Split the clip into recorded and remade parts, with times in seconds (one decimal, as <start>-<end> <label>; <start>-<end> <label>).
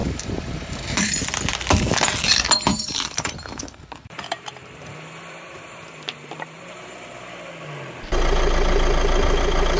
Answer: 0.0-1.1 remade; 1.1-2.7 recorded; 2.7-7.3 remade; 7.3-9.8 recorded